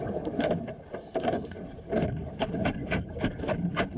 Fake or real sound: real